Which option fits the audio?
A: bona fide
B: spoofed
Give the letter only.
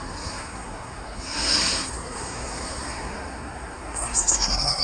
B